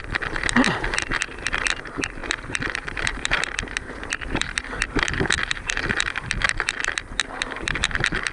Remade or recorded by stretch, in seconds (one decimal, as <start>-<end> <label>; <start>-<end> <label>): 0.0-2.2 recorded; 2.2-4.5 remade; 4.5-8.3 recorded